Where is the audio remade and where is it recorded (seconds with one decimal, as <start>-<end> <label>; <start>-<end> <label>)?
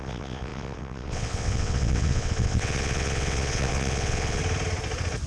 0.0-4.4 remade; 4.4-5.3 recorded